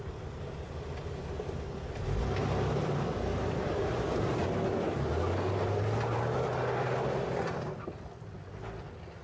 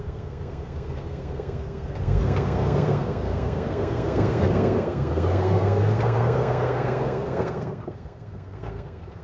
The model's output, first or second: second